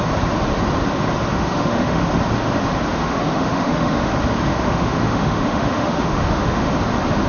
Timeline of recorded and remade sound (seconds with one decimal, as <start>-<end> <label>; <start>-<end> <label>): 0.0-1.3 recorded; 1.3-2.1 remade; 2.1-2.9 recorded; 2.9-4.1 remade; 4.1-4.5 recorded; 4.5-6.7 remade; 6.7-7.3 recorded